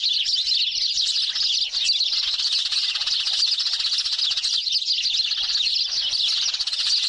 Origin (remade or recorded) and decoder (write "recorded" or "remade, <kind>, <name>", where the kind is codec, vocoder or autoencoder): recorded